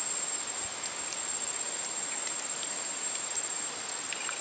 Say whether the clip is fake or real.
real